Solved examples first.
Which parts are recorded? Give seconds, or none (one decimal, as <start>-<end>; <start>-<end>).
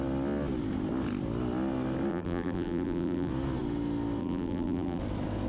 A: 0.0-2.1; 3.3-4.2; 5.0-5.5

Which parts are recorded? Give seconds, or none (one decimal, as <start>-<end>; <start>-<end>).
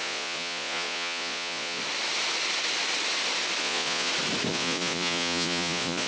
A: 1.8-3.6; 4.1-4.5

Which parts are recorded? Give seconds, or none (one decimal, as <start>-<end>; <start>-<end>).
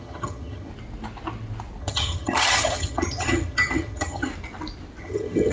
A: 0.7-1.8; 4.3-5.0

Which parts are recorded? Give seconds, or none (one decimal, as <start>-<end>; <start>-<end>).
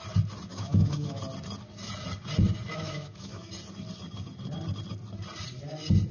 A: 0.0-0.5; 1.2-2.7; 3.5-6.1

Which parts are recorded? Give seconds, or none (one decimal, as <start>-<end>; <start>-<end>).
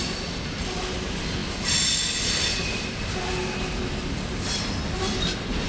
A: 0.0-5.7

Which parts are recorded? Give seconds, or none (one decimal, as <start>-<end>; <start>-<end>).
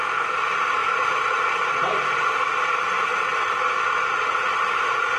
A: 0.0-0.8; 2.3-5.2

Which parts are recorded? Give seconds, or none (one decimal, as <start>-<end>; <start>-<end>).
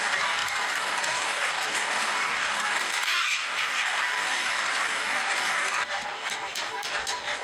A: none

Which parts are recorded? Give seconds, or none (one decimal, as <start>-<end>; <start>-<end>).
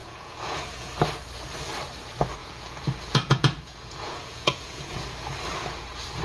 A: 0.9-2.4; 5.0-6.2